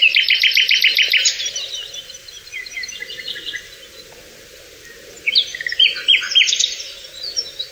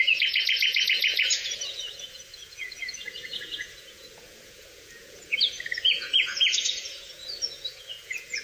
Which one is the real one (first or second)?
first